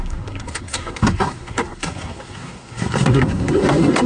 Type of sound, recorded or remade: remade